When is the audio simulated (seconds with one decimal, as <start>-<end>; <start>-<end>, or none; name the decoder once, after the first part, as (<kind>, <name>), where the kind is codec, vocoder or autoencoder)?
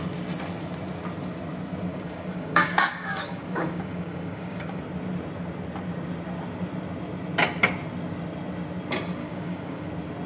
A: 1.9-4.8 (codec, DAC); 9.2-9.9